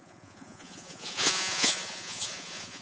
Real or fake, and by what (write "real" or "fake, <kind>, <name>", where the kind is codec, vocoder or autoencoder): fake, vocoder, Vocos